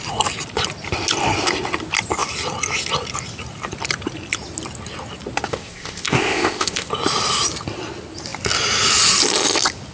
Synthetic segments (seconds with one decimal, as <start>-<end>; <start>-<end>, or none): 5.5-6.9